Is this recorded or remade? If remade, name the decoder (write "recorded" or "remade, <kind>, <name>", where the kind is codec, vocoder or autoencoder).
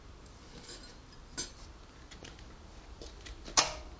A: recorded